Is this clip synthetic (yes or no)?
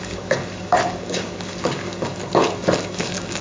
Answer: yes